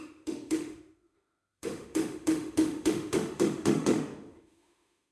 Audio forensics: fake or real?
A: fake